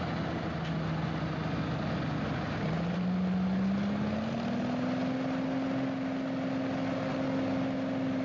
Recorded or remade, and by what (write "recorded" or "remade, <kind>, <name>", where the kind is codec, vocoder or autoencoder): recorded